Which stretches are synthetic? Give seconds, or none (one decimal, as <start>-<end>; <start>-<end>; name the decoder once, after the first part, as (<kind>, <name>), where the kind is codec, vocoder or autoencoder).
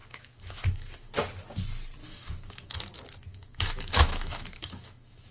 0.0-1.1 (autoencoder, DAC-VAE); 2.0-2.8; 3.3-5.3